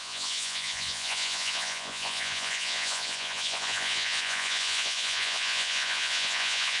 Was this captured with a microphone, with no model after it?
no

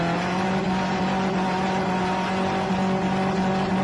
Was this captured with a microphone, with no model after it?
yes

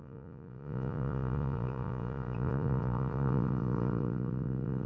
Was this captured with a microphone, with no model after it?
no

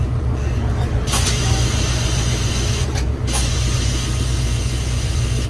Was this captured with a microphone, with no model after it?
no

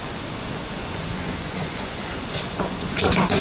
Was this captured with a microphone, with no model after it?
no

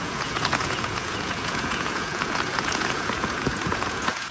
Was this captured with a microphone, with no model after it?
no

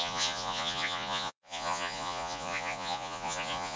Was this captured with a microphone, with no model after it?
no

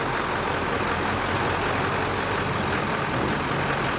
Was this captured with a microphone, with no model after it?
yes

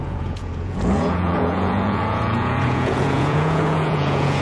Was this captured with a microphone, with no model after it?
no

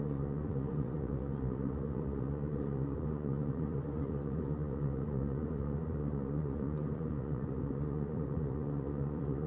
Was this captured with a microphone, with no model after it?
no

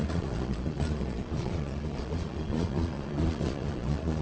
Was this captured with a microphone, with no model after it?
no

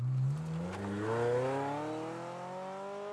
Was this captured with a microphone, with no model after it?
yes